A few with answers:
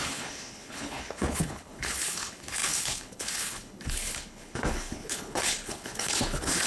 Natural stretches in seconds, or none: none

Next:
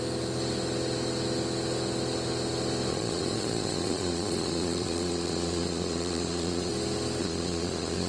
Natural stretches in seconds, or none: 0.0-2.9; 6.7-7.2

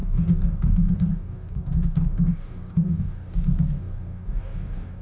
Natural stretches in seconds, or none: none

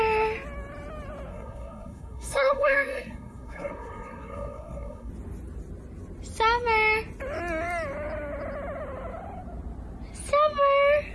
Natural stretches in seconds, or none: 0.0-1.3; 5.1-11.1

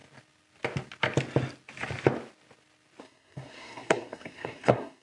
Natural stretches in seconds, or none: 0.0-3.0

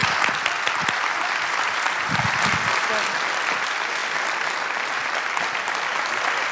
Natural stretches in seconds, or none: 0.0-6.5